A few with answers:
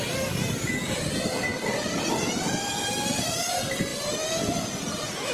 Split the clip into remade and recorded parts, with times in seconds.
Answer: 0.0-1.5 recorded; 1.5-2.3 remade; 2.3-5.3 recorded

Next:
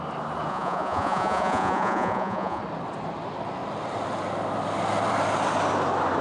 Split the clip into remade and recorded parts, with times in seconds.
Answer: 0.0-0.5 recorded; 0.5-2.6 remade; 2.6-6.2 recorded